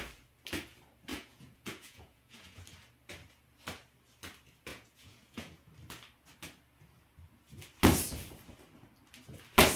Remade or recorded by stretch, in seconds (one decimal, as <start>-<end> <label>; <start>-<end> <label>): 0.0-1.1 recorded; 1.1-2.6 remade; 2.6-4.7 recorded; 4.7-5.7 remade; 5.7-9.8 recorded